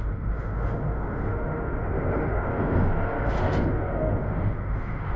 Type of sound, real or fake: fake